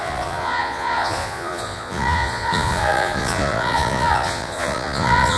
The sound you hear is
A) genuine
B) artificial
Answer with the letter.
B